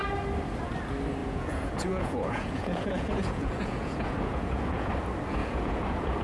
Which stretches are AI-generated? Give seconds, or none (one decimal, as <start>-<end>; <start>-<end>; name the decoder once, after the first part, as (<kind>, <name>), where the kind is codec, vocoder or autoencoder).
1.2-4.9 (vocoder, Vocos); 5.4-6.2